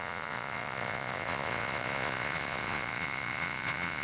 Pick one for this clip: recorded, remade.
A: remade